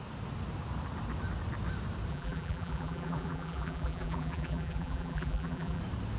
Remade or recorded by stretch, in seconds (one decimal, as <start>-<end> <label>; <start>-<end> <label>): 0.0-2.1 recorded; 2.1-5.8 remade; 5.8-6.2 recorded